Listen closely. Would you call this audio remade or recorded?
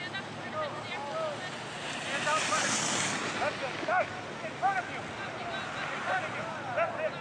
recorded